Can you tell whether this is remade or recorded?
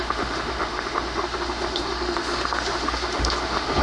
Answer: remade